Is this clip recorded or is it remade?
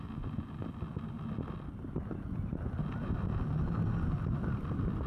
recorded